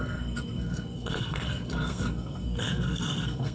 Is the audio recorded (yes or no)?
no